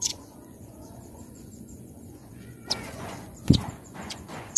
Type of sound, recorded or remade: remade